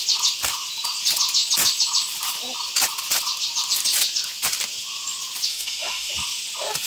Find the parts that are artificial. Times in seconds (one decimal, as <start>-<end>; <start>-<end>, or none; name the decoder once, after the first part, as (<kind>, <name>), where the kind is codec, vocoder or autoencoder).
5.5-6.1 (autoencoder, DAC-VAE)